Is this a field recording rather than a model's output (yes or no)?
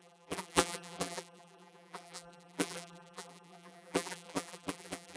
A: no